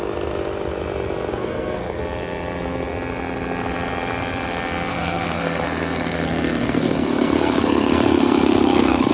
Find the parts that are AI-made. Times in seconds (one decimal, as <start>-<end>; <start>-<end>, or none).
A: 1.3-2.0; 4.9-9.1